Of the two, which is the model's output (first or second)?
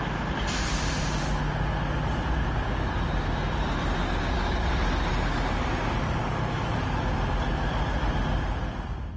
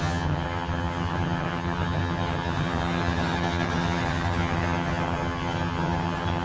second